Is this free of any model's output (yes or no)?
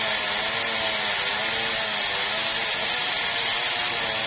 yes